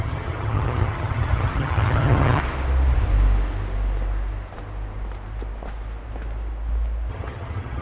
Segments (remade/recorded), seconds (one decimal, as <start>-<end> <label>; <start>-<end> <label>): 0.0-2.4 remade; 2.4-7.1 recorded; 7.1-7.8 remade